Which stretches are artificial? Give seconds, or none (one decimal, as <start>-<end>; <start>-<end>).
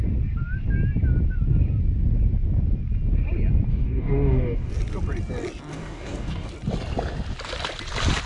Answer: 3.7-4.7; 5.7-6.5